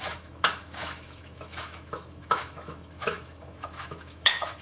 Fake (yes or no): yes